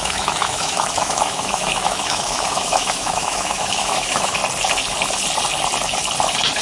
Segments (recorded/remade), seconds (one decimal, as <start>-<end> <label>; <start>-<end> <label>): 0.0-4.4 remade; 4.4-6.6 recorded